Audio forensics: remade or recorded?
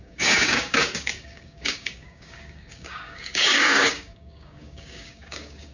remade